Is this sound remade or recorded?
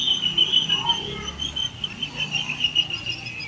recorded